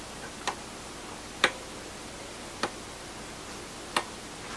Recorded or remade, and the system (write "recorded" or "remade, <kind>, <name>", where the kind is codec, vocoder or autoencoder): recorded